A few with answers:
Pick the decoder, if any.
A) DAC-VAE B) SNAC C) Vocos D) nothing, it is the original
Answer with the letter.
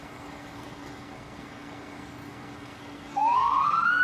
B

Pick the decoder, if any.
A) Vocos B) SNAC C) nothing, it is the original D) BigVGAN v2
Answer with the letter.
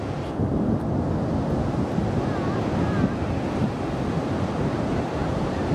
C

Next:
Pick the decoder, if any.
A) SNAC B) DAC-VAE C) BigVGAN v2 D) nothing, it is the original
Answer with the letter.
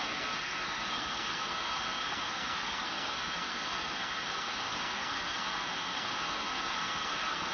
A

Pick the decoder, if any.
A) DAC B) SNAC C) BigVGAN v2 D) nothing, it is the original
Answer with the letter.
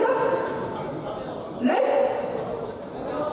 D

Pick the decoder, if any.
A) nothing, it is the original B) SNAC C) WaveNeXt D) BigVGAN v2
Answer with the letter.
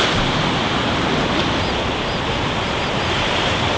A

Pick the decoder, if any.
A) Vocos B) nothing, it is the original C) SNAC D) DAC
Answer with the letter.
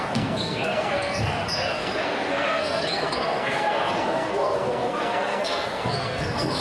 C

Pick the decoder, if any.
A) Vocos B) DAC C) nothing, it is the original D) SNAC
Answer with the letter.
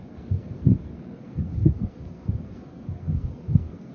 D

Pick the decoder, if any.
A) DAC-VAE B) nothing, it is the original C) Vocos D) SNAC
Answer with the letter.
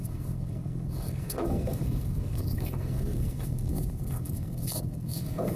D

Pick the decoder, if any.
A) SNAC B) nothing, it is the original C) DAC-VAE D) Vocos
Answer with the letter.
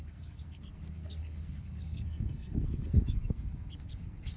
A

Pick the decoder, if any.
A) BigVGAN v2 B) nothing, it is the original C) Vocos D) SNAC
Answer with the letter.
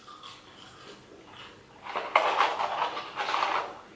B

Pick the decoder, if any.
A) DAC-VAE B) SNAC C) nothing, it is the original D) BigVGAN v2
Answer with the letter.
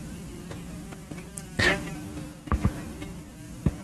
C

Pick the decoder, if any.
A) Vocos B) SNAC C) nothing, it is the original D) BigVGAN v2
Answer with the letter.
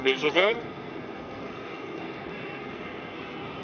B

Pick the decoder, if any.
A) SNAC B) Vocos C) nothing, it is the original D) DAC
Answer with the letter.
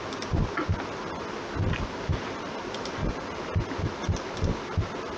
C